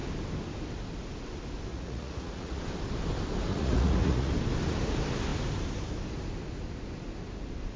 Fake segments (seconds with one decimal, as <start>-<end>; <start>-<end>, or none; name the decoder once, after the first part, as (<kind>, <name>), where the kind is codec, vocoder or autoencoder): 1.7-2.6 (vocoder, Vocos); 3.5-4.3